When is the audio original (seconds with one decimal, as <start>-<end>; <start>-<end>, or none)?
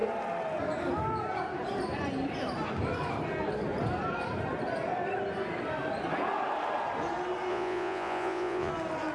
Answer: 0.0-7.5; 8.7-9.1